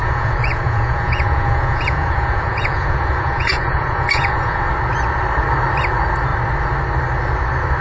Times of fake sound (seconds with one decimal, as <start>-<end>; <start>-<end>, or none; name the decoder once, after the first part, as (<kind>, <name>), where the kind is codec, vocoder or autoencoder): 0.0-4.7 (vocoder, Vocos)